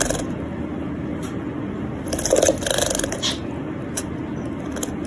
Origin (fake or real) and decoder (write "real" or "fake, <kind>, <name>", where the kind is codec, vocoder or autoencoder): real